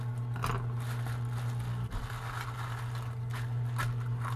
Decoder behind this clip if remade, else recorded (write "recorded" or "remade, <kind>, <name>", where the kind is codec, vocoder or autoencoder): recorded